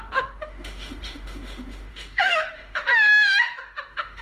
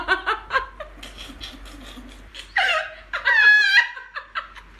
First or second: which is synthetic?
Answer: first